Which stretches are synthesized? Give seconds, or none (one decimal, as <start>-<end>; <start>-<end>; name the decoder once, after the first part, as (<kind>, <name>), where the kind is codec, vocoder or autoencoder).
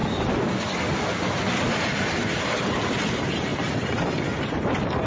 1.7-5.1 (vocoder, BigVGAN v2)